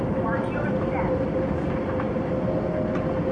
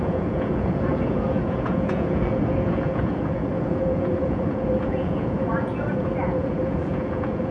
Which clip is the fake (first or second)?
second